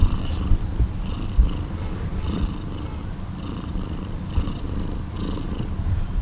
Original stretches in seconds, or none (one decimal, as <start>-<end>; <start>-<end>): 0.0-6.2